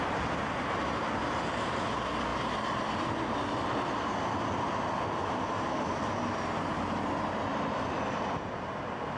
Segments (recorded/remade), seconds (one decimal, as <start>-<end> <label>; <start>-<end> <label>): 0.0-9.2 recorded